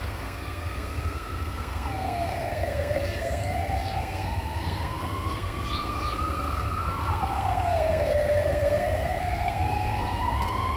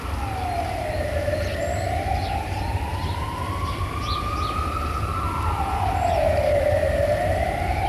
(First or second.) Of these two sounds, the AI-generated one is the first